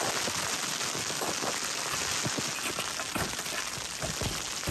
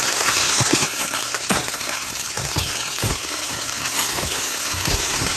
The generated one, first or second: second